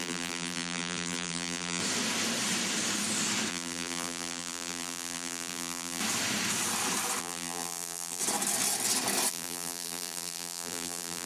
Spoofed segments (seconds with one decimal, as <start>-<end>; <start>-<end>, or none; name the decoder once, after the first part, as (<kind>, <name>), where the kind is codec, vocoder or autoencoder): 0.0-1.8 (vocoder, BigVGAN v2); 3.5-6.0; 7.2-8.2; 9.3-11.3